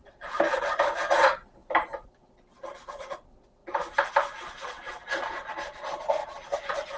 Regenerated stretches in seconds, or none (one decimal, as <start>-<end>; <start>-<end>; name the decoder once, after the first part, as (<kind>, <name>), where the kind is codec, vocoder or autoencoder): 1.6-2.2 (vocoder, BigVGAN v2); 6.2-7.0